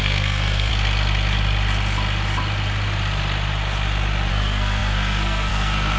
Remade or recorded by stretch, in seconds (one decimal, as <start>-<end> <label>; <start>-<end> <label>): 0.0-0.7 remade; 0.7-4.3 recorded; 4.3-6.0 remade